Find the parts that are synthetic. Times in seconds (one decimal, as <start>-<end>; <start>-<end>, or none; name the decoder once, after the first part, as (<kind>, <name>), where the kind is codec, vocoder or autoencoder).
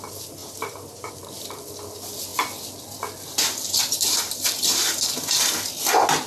0.4-1.1 (vocoder, BigVGAN v2); 3.8-5.1